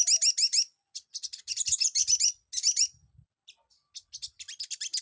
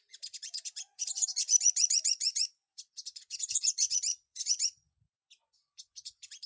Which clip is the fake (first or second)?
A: second